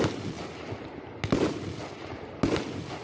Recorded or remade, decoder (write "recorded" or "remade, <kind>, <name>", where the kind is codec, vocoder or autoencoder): recorded